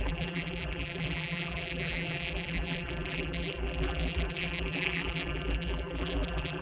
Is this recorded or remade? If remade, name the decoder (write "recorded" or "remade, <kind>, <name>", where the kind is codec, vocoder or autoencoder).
remade, vocoder, BigVGAN v2